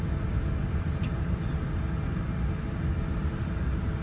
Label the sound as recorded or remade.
recorded